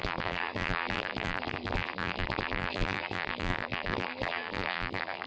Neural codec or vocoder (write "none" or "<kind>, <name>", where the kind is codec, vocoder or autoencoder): vocoder, BigVGAN v2